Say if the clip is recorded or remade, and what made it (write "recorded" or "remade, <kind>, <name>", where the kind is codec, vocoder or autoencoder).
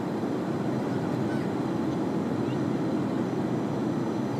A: recorded